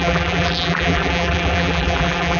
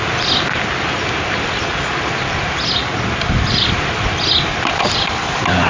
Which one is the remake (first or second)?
first